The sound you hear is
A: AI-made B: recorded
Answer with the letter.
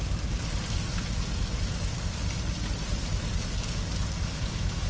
B